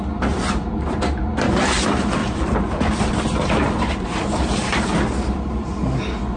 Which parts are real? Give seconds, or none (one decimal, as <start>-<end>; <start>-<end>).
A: 0.0-2.2; 6.0-6.4